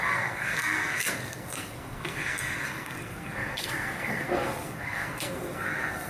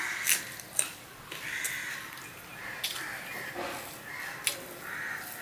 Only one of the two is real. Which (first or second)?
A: second